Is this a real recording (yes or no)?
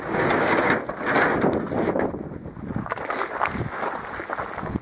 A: yes